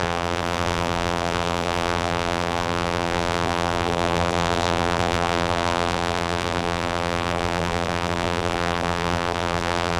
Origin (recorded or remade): remade